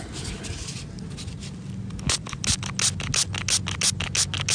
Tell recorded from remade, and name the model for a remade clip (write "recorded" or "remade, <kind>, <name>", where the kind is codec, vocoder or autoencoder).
recorded